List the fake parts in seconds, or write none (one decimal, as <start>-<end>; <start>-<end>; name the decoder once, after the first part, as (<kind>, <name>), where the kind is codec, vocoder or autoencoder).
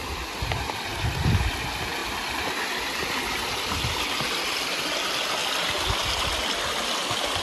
none